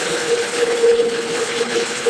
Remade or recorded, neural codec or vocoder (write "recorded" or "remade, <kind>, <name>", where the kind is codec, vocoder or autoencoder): remade, codec, HILCodec